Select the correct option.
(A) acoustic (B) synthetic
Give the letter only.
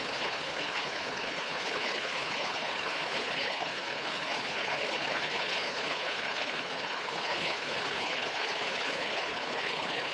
B